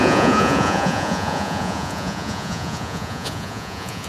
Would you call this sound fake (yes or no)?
yes